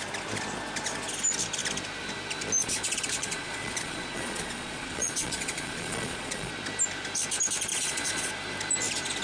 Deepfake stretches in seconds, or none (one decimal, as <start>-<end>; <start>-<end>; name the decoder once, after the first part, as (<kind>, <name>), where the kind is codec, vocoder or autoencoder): 2.6-6.5 (vocoder, Vocos); 7.7-8.3